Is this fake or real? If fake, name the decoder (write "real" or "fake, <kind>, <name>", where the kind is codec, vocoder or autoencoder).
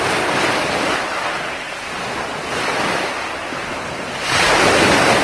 real